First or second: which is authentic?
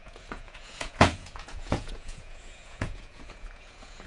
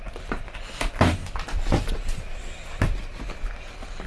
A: second